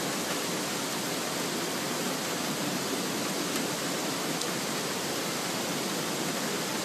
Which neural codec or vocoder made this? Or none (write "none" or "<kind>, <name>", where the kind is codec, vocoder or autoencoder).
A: none